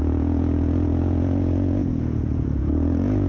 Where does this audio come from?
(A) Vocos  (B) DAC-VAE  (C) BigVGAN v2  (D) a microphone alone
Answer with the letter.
A